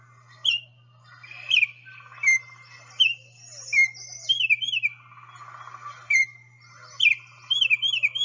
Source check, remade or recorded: recorded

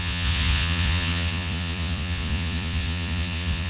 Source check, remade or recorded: remade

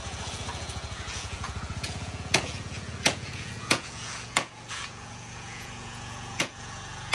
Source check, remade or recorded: remade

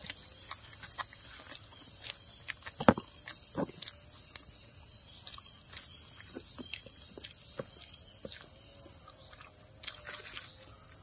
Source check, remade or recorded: recorded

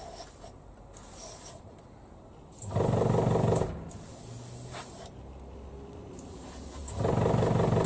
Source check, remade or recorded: recorded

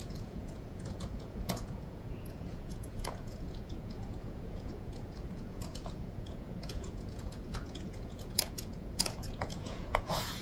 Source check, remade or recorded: remade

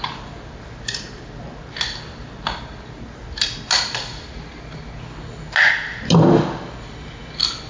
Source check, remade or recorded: recorded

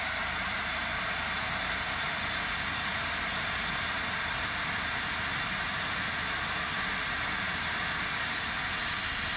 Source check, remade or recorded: recorded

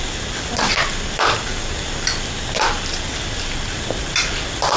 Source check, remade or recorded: recorded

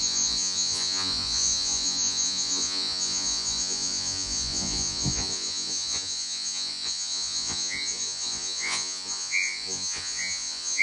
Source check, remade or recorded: remade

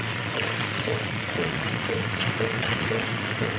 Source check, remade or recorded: remade